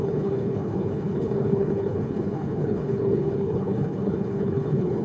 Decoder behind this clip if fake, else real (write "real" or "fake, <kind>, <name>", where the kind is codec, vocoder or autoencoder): fake, codec, HILCodec